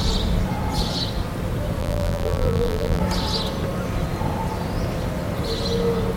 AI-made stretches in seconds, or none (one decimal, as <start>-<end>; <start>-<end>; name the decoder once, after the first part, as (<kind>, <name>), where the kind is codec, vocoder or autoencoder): 1.8-3.0 (vocoder, BigVGAN v2)